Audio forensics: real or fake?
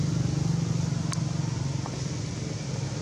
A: real